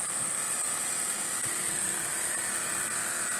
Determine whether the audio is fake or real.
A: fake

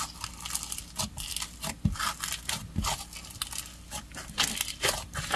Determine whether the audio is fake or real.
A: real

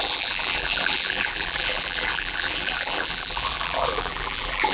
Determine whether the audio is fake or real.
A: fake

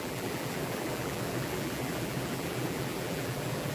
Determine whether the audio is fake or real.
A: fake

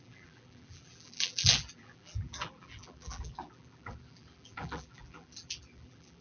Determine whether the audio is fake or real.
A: fake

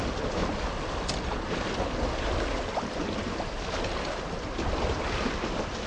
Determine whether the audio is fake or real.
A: real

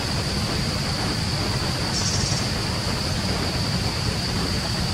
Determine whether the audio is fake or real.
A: real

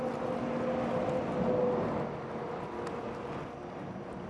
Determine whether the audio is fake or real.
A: real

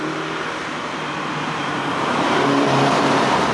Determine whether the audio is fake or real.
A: fake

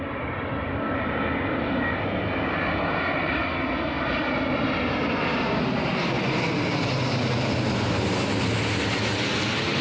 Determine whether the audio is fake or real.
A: real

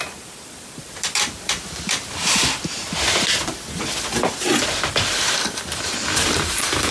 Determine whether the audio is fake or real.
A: fake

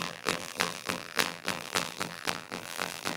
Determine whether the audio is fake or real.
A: fake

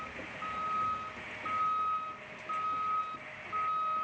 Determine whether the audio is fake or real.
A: real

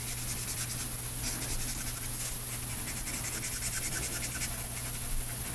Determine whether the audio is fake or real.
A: real